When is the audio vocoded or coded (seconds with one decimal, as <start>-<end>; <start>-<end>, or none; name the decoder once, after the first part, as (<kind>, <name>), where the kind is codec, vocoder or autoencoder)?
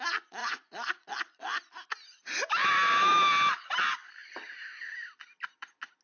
0.4-1.1 (vocoder, Vocos)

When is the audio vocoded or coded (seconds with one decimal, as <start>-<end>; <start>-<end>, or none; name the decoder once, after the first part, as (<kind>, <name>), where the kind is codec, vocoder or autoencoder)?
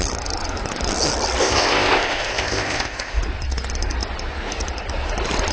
1.4-3.2 (codec, ZipCodec)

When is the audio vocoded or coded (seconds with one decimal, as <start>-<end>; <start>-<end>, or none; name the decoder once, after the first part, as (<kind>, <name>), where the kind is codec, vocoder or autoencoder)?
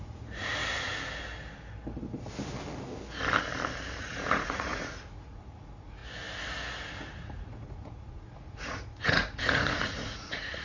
0.0-0.6 (vocoder, Vocos); 4.0-6.0; 7.1-10.6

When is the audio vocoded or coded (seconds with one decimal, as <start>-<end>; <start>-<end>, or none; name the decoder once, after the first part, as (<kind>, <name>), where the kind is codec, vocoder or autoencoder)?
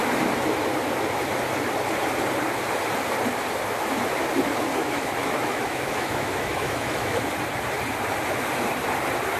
4.8-7.3 (autoencoder, DAC-VAE)